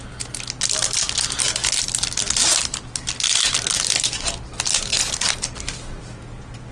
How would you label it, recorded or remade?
recorded